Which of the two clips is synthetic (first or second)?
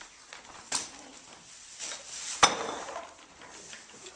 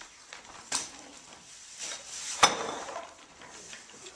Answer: second